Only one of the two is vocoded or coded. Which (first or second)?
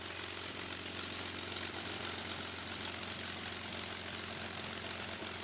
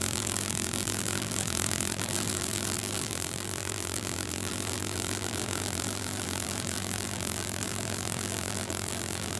second